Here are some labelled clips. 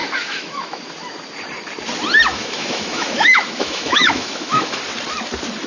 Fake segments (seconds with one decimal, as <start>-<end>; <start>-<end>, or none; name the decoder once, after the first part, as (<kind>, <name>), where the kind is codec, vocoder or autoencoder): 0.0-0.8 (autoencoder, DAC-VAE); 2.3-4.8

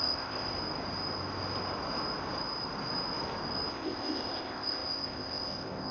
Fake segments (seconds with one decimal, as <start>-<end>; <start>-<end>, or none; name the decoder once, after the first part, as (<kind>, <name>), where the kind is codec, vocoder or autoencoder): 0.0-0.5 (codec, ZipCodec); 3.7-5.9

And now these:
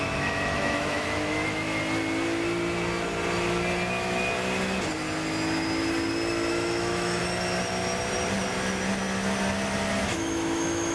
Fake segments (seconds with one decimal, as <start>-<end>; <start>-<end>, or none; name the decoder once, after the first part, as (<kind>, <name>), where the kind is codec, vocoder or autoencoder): 0.0-1.8 (autoencoder, DAC-VAE); 6.5-7.2; 10.0-10.9

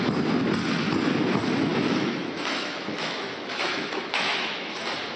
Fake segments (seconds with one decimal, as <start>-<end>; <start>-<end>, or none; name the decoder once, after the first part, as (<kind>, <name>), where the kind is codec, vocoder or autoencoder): 1.7-4.8 (autoencoder, DAC-VAE)

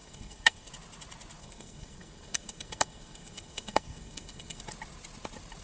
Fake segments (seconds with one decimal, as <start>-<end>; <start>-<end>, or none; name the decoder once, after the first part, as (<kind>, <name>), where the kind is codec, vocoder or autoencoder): 0.0-0.7 (codec, SNAC); 1.4-4.6

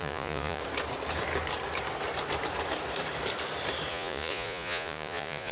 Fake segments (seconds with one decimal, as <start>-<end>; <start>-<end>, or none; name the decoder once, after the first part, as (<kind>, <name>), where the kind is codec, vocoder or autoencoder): 0.0-0.6 (vocoder, Vocos); 3.9-5.5

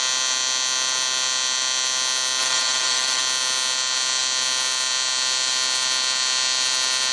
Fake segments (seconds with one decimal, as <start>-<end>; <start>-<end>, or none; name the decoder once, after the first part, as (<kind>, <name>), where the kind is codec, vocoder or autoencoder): 2.4-3.2 (vocoder, BigVGAN v2)

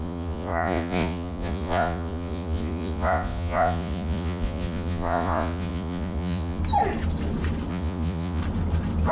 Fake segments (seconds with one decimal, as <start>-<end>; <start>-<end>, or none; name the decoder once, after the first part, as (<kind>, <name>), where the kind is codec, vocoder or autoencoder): 0.0-6.6 (vocoder, Vocos); 7.7-8.4